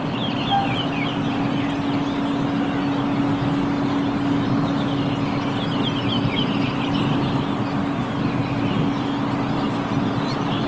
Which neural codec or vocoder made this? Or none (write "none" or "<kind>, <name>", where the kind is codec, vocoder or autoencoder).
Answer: none